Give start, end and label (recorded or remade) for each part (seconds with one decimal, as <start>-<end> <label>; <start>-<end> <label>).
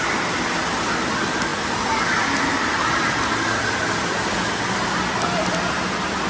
0.0-6.3 recorded